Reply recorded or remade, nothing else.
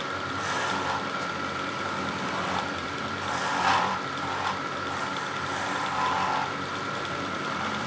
remade